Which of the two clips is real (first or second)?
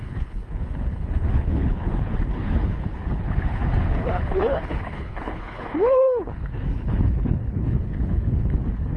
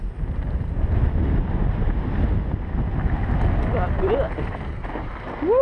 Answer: second